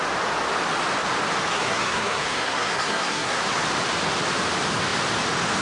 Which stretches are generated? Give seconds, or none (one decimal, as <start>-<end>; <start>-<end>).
1.5-3.4